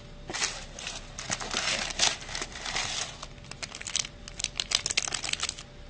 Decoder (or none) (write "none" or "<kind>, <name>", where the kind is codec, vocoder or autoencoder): none